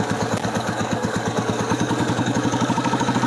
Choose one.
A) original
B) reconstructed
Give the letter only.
B